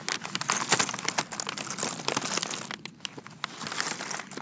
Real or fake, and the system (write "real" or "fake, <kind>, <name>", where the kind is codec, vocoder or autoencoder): real